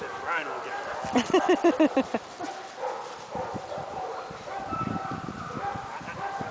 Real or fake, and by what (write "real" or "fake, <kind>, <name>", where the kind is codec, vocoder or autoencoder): real